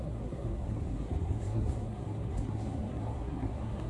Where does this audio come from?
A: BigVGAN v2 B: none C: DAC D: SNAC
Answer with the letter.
D